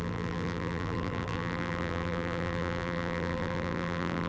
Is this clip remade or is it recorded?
remade